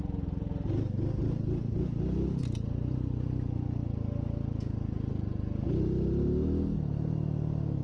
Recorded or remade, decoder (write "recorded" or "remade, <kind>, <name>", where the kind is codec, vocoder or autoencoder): recorded